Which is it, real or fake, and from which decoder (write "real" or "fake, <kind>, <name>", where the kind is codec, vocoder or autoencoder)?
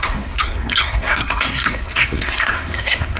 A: fake, codec, SNAC